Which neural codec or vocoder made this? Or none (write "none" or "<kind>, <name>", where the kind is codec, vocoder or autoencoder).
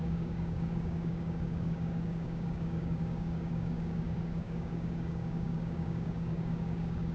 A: codec, DAC